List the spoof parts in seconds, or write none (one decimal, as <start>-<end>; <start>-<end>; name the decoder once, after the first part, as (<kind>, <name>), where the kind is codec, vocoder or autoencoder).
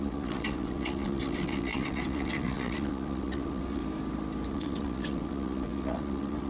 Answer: 0.0-3.8 (vocoder, WaveNeXt); 4.5-6.5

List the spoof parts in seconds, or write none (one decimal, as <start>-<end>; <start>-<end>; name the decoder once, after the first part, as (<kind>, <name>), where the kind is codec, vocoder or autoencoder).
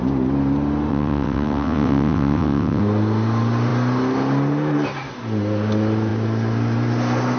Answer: 0.9-2.8 (vocoder, WaveNeXt)